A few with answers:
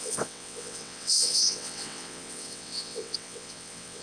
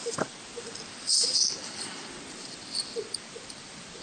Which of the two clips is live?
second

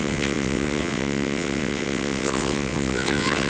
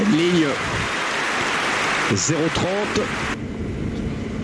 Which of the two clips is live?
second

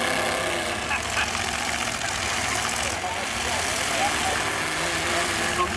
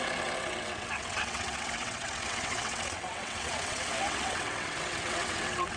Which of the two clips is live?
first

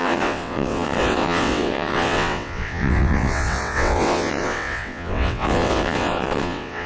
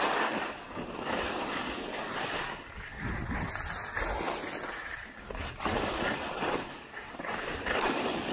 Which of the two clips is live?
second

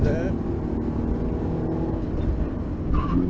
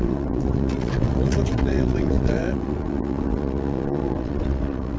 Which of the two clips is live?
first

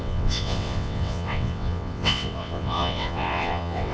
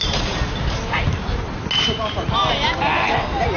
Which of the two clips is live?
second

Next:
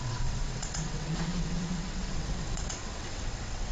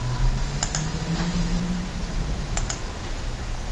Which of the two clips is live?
second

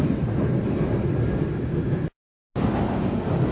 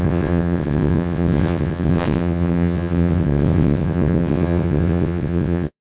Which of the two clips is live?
first